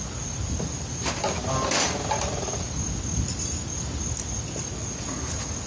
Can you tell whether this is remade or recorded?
recorded